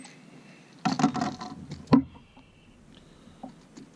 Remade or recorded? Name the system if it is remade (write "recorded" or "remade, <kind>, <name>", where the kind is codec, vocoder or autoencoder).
recorded